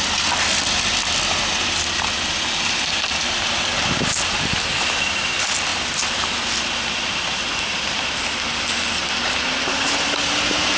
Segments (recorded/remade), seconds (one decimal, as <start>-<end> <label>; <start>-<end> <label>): 0.0-10.8 recorded